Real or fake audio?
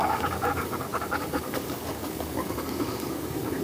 fake